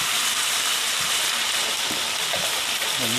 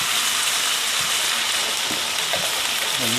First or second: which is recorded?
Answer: second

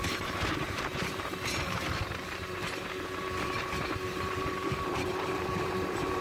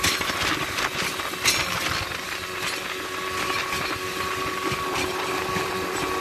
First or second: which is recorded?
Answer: second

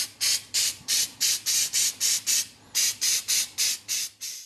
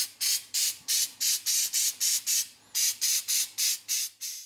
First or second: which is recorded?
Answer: second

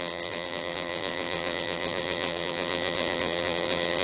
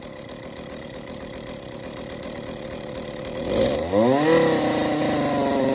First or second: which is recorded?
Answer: second